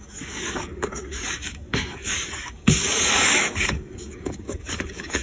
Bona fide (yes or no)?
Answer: no